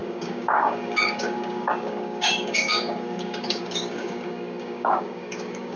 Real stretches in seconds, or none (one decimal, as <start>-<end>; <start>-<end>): none